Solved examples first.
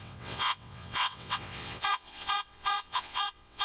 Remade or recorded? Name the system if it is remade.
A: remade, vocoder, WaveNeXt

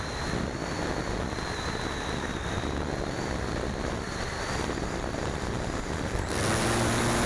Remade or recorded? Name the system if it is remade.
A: recorded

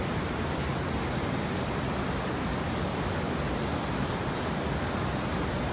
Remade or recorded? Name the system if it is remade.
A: recorded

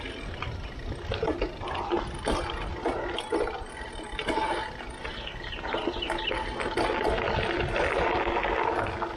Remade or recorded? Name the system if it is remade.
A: recorded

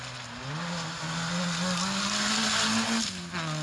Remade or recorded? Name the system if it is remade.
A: recorded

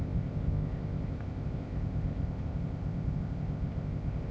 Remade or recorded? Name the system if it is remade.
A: remade, codec, ZipCodec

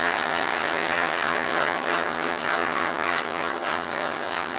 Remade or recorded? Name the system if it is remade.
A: remade, vocoder, HiFi-GAN